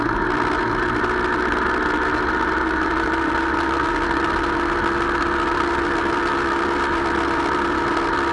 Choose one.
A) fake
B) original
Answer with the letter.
B